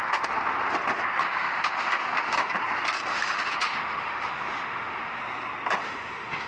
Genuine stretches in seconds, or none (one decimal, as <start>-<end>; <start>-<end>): 0.0-1.2; 2.5-3.1; 5.2-5.8